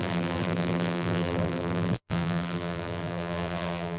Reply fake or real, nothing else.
fake